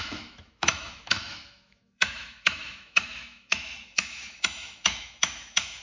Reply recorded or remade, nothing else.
remade